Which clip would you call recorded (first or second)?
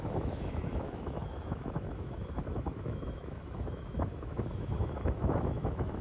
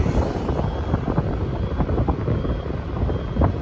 second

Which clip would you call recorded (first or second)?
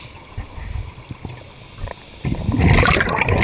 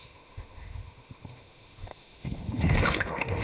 first